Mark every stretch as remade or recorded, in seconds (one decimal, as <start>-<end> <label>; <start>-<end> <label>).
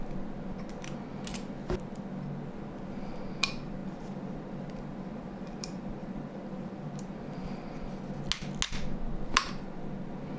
0.0-3.8 recorded; 3.8-8.2 remade; 8.2-10.4 recorded